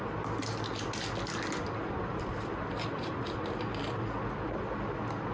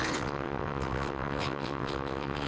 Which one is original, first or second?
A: first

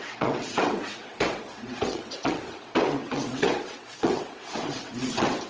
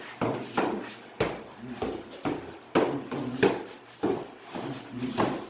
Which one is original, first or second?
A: second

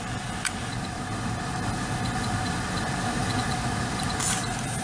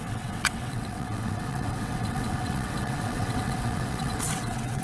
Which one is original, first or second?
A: first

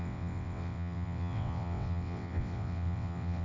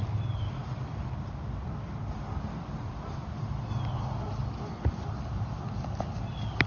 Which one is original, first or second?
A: second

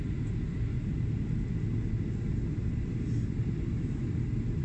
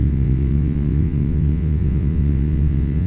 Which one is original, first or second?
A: first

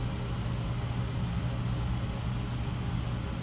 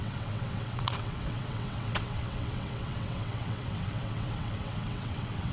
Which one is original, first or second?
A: first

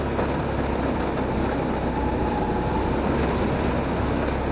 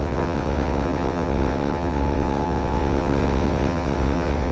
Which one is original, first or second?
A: first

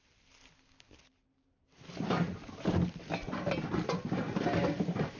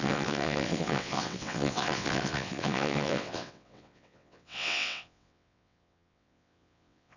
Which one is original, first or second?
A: first